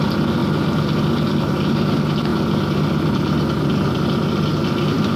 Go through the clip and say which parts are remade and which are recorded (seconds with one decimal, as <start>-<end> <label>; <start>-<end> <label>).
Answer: 0.0-5.2 recorded